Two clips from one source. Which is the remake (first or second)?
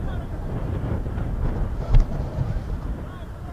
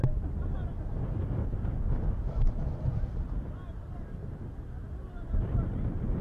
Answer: first